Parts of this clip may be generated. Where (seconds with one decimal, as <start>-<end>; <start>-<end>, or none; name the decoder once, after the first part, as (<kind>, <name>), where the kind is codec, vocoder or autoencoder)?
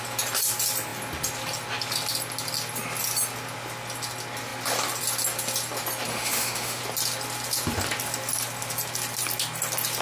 6.1-6.8 (autoencoder, DAC-VAE)